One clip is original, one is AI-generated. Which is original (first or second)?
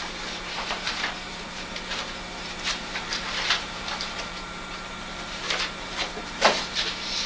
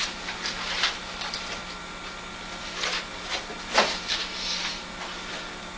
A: second